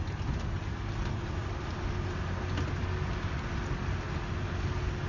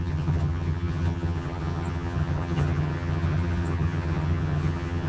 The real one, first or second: first